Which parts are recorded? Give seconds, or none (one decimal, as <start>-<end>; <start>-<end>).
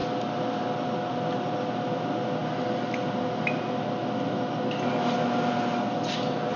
0.6-6.6